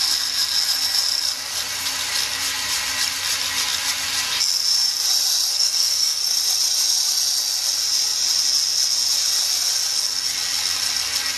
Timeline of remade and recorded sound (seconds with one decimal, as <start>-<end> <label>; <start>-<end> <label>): 0.0-5.5 recorded; 5.5-6.2 remade; 6.2-11.4 recorded